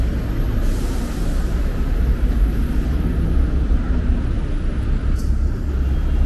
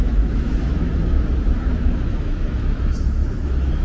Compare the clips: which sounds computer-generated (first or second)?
second